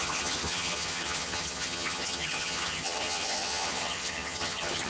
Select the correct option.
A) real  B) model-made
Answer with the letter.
B